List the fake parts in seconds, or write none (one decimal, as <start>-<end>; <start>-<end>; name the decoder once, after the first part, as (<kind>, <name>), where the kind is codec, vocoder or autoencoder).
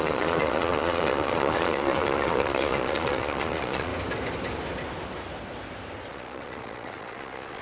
0.0-3.9 (vocoder, Vocos); 6.1-7.6